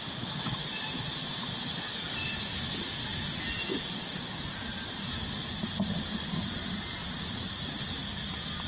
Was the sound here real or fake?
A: real